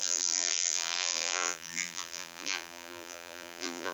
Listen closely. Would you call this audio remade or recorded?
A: remade